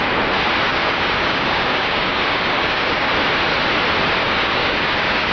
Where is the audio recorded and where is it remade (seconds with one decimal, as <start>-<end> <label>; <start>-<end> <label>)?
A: 0.0-0.7 recorded; 0.7-3.1 remade; 3.1-4.2 recorded; 4.2-5.3 remade